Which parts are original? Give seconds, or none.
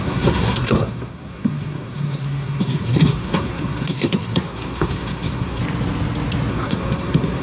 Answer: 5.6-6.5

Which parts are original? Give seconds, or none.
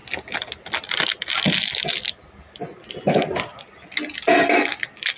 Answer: 0.0-5.2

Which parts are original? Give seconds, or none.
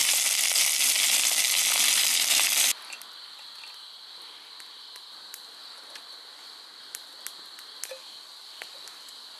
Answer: 0.0-9.4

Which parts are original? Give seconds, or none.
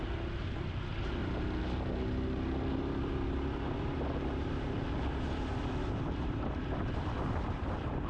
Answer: 0.0-0.5; 1.2-2.7